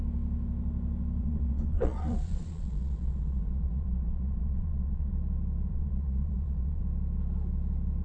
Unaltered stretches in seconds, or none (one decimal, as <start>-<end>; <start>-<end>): 0.0-1.2; 5.1-5.7; 6.8-8.0